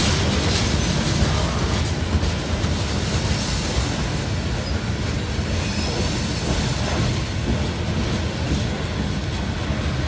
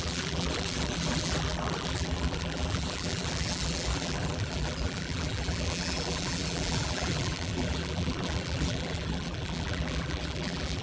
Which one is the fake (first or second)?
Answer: second